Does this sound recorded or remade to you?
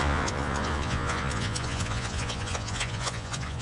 remade